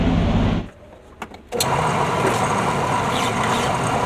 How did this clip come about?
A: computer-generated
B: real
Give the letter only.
B